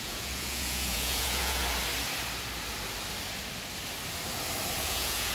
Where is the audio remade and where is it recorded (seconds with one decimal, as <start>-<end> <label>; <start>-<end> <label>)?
0.0-1.6 remade; 1.6-4.8 recorded; 4.8-5.3 remade